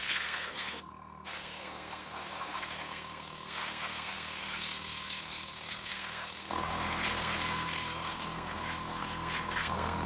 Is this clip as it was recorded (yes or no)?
no